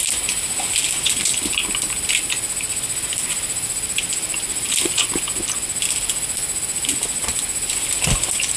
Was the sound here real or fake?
real